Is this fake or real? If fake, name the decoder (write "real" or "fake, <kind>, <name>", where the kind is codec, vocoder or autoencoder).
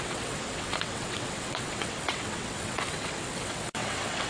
fake, vocoder, WaveNeXt